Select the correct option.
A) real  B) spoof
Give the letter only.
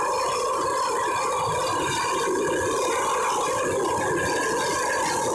A